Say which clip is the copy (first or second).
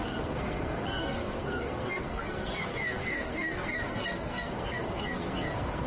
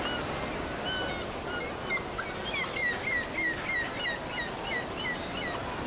first